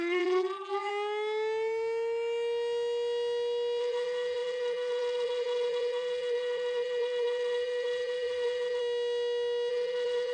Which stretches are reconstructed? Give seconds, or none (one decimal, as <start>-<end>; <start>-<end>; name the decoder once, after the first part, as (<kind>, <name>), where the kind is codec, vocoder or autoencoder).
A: 0.0-0.9 (vocoder, BigVGAN v2); 3.8-8.8; 9.7-10.3